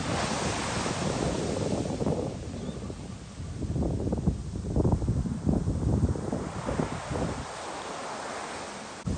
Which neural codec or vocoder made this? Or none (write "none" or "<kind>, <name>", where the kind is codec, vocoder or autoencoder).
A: none